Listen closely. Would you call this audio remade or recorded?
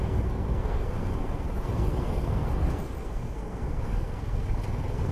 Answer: remade